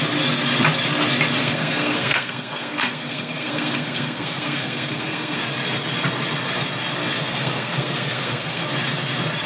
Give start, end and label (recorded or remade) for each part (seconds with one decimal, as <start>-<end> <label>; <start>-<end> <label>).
0.0-1.4 recorded; 1.4-5.4 remade; 5.4-7.2 recorded; 7.2-8.6 remade; 8.6-9.5 recorded